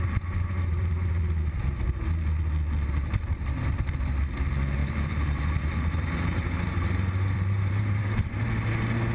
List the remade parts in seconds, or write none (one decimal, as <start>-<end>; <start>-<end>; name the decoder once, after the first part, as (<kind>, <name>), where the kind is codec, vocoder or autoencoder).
4.8-8.5 (vocoder, BigVGAN v2)